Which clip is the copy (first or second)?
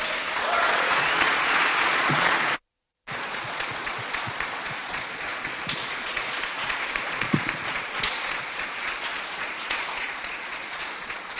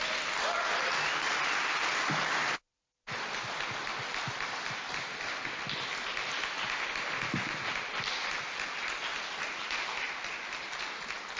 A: first